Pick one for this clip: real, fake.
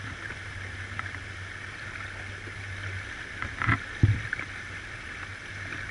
real